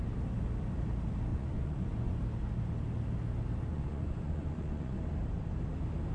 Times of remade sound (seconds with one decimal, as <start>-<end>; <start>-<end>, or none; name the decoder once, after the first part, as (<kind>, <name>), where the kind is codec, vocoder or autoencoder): 1.3-2.2 (vocoder, Vocos); 3.7-5.0